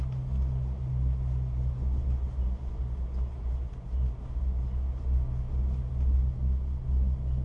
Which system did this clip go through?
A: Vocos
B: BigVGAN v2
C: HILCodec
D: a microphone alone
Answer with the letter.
D